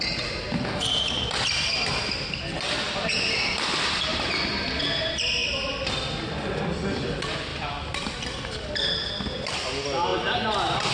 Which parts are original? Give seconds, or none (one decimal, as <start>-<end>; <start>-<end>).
0.0-4.1; 4.8-5.4; 5.9-7.5; 8.7-10.9